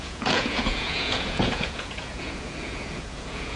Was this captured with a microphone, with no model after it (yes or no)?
no